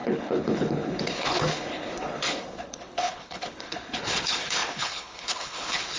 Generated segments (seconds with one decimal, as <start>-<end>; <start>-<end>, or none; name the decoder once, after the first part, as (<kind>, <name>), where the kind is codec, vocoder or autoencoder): 0.0-6.0 (codec, HILCodec)